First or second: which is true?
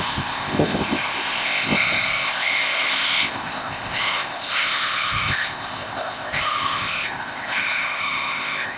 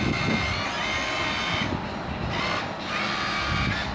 second